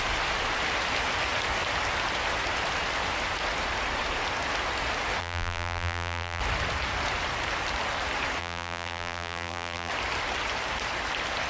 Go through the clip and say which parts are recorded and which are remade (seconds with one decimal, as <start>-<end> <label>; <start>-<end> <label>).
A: 0.0-5.2 recorded; 5.2-6.4 remade; 6.4-8.4 recorded; 8.4-9.9 remade; 9.9-11.5 recorded